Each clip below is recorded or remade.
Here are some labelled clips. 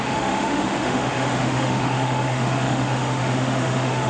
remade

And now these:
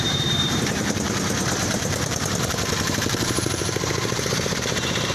remade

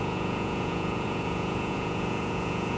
remade